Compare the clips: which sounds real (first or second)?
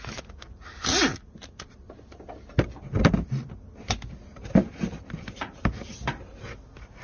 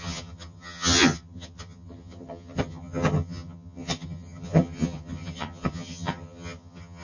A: first